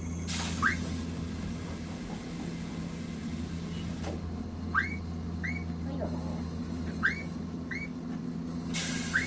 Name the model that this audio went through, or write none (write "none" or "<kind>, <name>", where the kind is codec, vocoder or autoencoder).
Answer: none